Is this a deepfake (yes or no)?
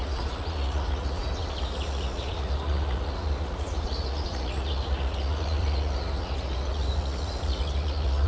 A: yes